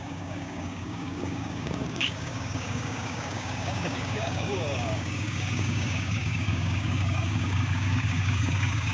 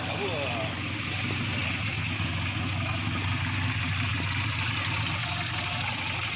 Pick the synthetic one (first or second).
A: first